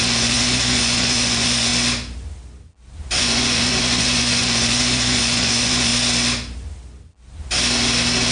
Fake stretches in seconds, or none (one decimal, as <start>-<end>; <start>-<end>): 0.0-1.7; 3.2-5.9